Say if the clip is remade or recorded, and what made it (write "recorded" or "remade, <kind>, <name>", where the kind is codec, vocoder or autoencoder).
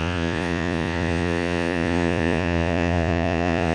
remade, vocoder, Vocos